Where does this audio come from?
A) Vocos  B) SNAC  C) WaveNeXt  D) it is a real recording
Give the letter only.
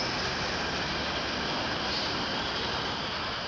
D